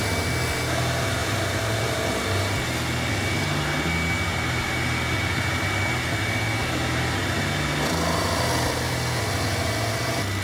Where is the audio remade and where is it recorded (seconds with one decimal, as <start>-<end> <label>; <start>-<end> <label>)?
0.0-10.4 recorded